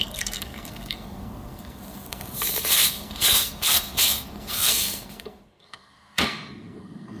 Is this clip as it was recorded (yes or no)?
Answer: no